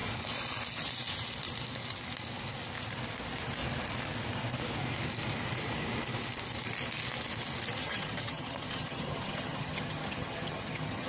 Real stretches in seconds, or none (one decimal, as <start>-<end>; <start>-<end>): 0.0-7.8